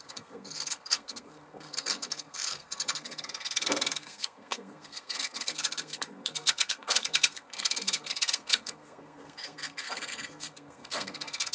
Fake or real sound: fake